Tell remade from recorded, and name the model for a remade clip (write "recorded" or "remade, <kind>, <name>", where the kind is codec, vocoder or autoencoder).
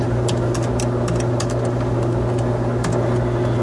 recorded